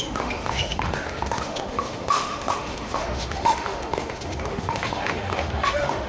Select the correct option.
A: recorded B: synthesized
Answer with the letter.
B